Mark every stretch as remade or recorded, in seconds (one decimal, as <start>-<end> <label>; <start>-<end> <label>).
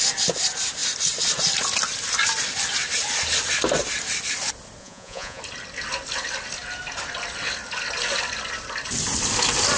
0.0-4.8 recorded; 4.8-5.4 remade; 5.4-9.8 recorded